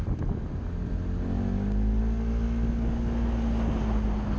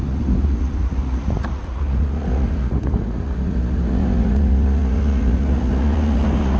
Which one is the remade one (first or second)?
second